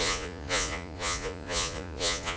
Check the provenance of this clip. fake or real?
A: fake